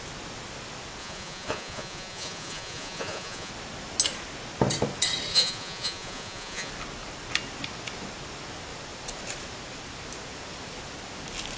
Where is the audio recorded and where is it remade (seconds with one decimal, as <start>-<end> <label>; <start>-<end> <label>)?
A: 0.0-1.0 recorded; 1.0-3.5 remade; 3.5-5.3 recorded; 5.3-6.7 remade; 6.7-11.6 recorded